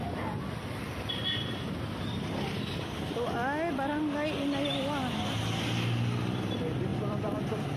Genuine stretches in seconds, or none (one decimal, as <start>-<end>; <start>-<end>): 0.0-6.9